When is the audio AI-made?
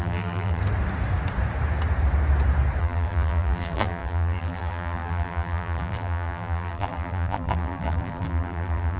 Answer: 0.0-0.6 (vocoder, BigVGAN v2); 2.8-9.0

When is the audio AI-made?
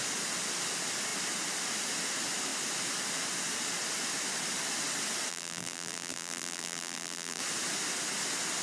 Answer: 5.3-7.4 (vocoder, BigVGAN v2)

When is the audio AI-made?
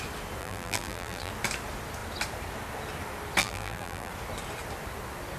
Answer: 0.4-1.3 (vocoder, BigVGAN v2); 3.4-4.1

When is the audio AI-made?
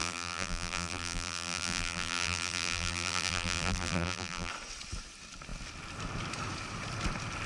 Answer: 0.0-4.5 (vocoder, BigVGAN v2)